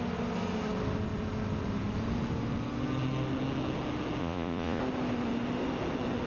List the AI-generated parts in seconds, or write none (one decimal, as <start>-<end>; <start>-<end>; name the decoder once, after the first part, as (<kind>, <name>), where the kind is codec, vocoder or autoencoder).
4.2-4.8 (vocoder, Vocos)